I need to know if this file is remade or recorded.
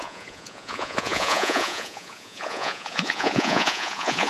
remade